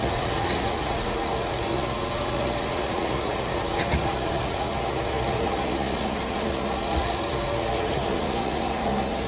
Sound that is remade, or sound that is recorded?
remade